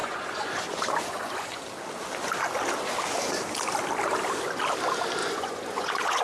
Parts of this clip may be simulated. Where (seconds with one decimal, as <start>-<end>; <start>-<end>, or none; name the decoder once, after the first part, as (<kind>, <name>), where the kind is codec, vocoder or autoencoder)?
0.0-1.6 (vocoder, Vocos); 5.2-6.2